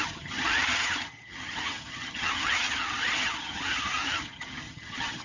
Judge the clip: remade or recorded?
remade